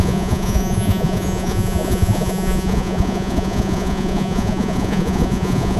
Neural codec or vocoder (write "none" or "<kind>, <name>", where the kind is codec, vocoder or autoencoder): vocoder, Vocos